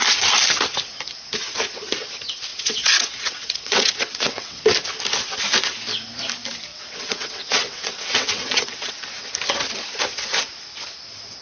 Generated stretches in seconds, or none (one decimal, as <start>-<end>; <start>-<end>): 2.5-4.6; 6.7-8.9